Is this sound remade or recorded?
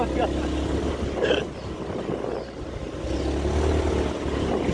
recorded